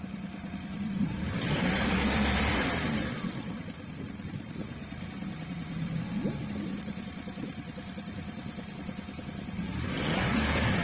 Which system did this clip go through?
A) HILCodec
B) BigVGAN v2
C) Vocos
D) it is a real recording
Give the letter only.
B